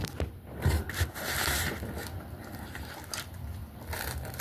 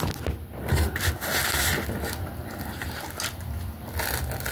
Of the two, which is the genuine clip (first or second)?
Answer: second